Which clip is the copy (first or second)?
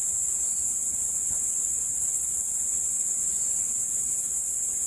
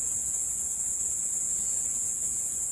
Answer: second